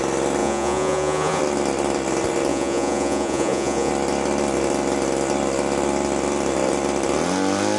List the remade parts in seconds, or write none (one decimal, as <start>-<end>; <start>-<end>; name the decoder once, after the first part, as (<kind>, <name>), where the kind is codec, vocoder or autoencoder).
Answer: 0.4-1.4 (vocoder, Vocos); 2.5-3.9